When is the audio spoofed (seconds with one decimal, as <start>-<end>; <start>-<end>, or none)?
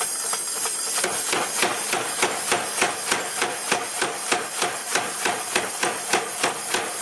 1.7-2.5; 4.8-5.7